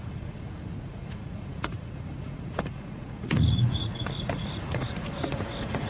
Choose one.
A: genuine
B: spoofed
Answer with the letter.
B